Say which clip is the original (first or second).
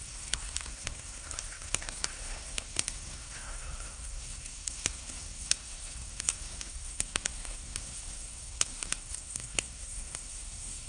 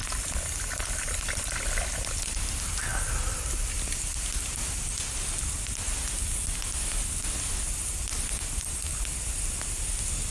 second